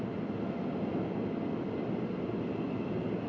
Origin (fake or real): real